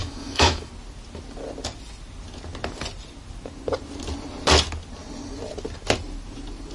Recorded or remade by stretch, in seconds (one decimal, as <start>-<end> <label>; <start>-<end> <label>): 0.0-0.7 remade; 0.7-6.7 recorded